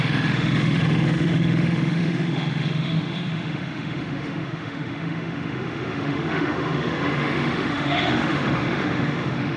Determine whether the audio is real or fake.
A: fake